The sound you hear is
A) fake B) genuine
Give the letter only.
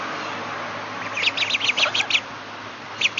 B